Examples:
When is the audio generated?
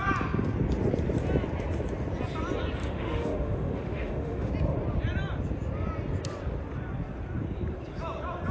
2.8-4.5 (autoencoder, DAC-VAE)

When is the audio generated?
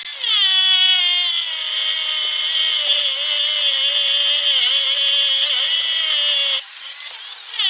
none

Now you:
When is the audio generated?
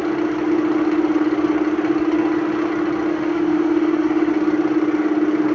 3.1-4.3 (autoencoder, DAC-VAE)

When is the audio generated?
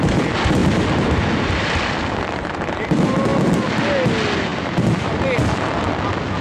none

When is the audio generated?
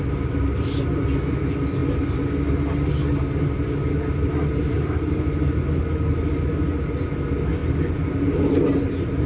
none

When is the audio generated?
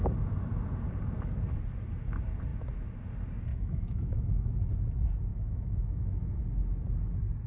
3.5-4.7 (autoencoder, DAC-VAE); 5.3-6.4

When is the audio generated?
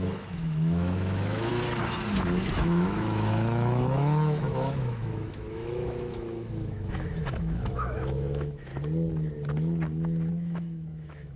0.0-1.5 (autoencoder, DAC-VAE); 2.5-8.7; 10.3-11.4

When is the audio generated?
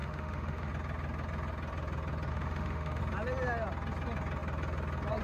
0.0-0.7 (autoencoder, DAC-VAE); 2.3-3.0